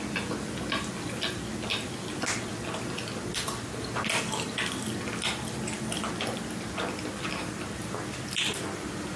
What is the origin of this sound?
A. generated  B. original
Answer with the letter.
B